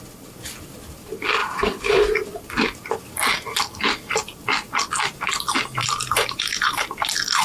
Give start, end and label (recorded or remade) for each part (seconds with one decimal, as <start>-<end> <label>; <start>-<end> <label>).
0.0-1.4 recorded; 1.4-2.1 remade; 2.1-5.8 recorded; 5.8-6.7 remade; 6.7-7.4 recorded